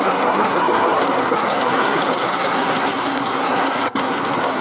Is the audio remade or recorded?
remade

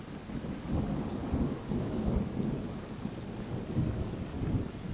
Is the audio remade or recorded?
remade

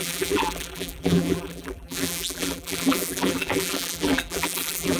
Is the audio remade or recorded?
remade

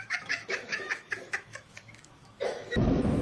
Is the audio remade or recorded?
remade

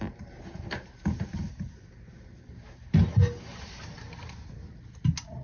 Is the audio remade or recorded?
recorded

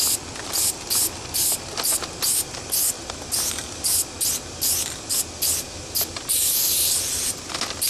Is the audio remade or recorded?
recorded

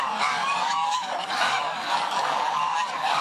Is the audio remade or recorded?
remade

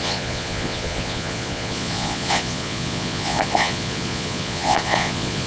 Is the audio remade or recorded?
remade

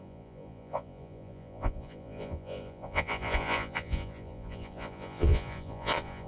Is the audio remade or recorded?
remade